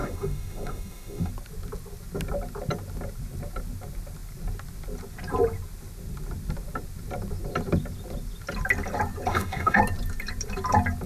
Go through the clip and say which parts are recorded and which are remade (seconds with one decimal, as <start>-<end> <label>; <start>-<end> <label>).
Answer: 0.0-1.3 remade; 1.3-9.3 recorded; 9.3-9.8 remade; 9.8-11.1 recorded